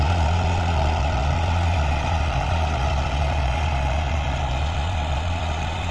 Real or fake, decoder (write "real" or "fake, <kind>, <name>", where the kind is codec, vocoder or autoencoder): fake, vocoder, Vocos